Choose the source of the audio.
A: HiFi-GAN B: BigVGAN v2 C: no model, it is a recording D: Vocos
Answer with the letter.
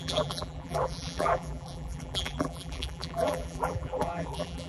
B